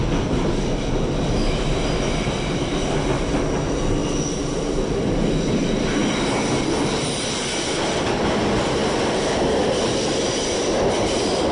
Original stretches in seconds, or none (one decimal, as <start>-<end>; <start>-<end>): 0.0-11.5